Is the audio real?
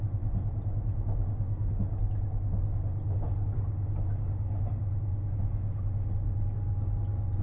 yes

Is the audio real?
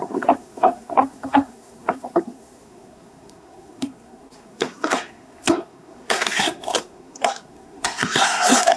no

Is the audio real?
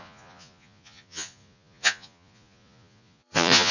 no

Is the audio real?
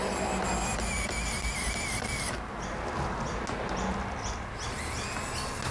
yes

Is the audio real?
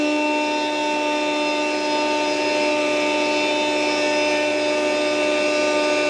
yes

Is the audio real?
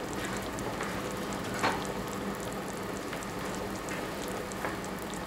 yes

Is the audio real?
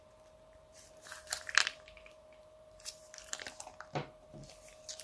no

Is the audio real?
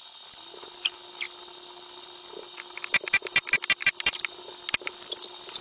yes